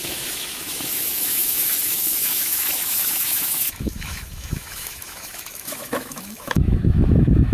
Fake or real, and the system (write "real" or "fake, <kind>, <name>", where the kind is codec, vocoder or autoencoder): fake, autoencoder, DAC-VAE